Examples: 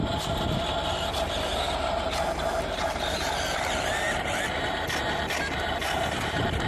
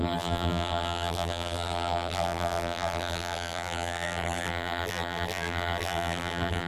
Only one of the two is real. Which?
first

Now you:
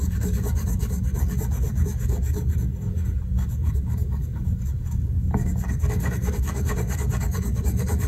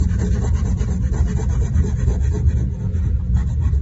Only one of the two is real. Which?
second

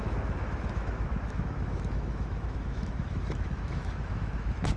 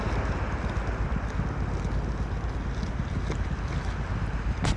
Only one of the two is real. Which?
second